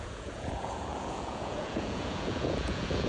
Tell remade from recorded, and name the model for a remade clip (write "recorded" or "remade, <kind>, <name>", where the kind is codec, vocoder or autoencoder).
remade, vocoder, Vocos